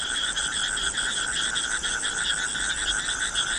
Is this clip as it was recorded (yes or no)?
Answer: yes